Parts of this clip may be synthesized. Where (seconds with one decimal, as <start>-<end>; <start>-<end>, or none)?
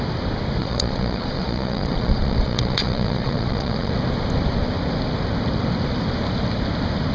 0.6-3.9